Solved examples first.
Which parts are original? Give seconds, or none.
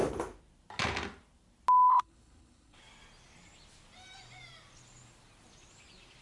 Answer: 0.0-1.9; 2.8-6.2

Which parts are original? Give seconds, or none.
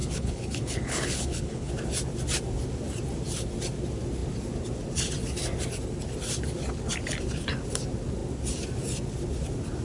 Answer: 1.7-9.8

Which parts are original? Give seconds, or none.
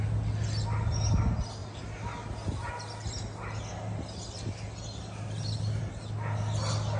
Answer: 0.0-7.0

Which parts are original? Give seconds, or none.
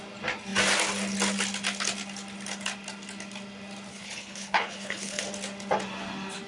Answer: 0.0-3.9; 5.2-6.5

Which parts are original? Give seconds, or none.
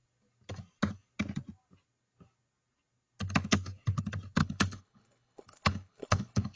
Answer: 0.0-4.4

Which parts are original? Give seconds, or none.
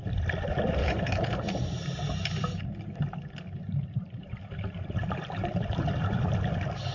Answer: 0.0-0.8; 1.3-6.9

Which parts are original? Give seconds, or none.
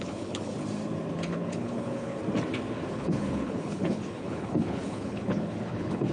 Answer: 0.5-1.1; 2.2-2.9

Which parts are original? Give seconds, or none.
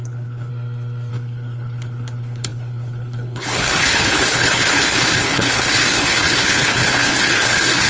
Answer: 0.5-1.1